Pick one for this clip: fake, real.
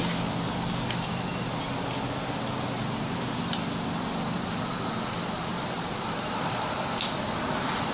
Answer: real